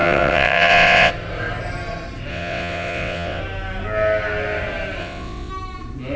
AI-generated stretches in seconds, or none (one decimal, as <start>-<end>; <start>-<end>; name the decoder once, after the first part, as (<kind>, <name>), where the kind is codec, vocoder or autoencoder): 0.0-1.1 (vocoder, WaveNeXt); 2.3-3.4; 5.0-5.5